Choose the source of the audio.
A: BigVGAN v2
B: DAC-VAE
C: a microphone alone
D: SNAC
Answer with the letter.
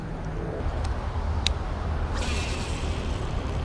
A